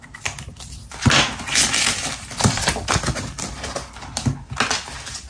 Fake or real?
real